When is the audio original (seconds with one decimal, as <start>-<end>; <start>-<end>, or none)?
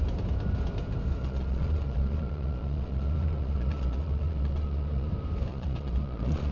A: 0.0-1.2; 5.1-5.5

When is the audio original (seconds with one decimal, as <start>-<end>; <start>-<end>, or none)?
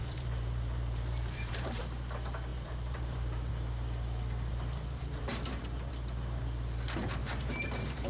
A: 1.8-2.5; 3.5-4.5; 5.9-7.2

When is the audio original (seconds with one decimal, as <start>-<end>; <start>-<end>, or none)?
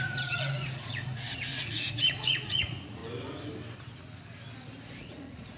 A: 3.0-5.0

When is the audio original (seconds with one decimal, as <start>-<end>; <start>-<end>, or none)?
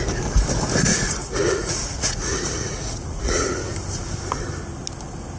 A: 0.0-0.9; 3.6-5.4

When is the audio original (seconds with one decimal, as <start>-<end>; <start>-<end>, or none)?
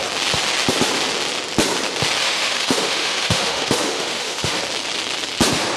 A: 0.0-2.2; 4.6-5.8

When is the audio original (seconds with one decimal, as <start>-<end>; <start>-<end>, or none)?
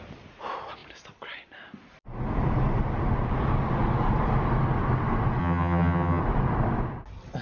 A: 0.0-5.4; 6.2-7.4